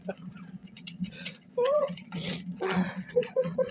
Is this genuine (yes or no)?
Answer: no